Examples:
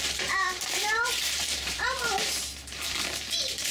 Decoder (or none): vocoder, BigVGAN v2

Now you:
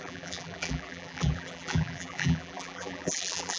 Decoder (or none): vocoder, BigVGAN v2